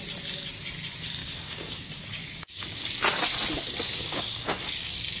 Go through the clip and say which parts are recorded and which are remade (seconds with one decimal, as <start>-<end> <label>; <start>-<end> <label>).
0.0-1.2 recorded; 1.2-2.9 remade; 2.9-3.8 recorded; 3.8-5.2 remade